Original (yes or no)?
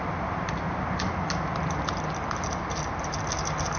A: yes